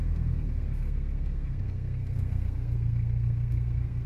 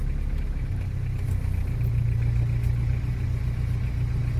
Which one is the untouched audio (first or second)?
second